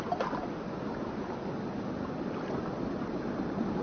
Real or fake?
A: real